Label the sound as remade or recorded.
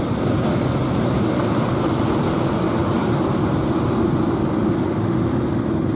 recorded